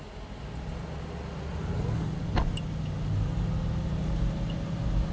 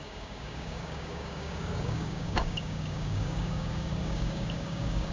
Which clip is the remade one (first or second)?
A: second